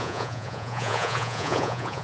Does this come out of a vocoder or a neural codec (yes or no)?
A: yes